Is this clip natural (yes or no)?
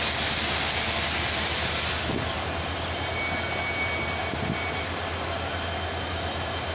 yes